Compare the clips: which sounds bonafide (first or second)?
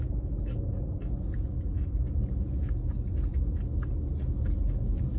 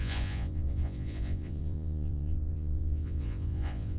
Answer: first